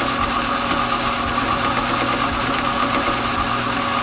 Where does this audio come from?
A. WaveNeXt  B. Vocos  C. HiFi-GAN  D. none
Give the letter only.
D